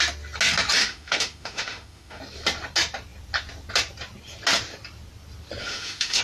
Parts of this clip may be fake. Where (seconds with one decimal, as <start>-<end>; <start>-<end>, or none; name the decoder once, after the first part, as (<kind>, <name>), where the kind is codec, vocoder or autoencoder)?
0.8-2.2 (autoencoder, DAC-VAE); 5.6-6.2